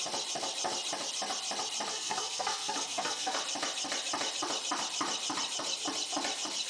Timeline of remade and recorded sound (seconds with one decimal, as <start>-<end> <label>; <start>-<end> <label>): 0.0-1.9 recorded; 1.9-3.4 remade; 3.4-6.7 recorded